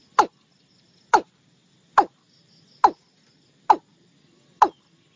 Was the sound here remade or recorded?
recorded